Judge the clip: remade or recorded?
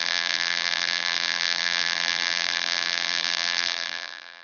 remade